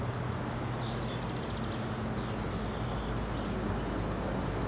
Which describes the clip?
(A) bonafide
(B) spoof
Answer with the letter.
A